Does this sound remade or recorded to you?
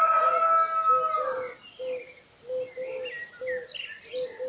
recorded